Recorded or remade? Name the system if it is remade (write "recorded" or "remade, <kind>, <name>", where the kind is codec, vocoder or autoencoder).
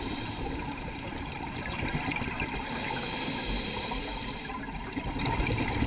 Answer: remade, vocoder, BigVGAN v2